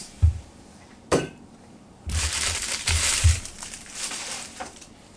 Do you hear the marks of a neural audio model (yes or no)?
yes